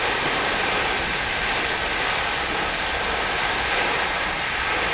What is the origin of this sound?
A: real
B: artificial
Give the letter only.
A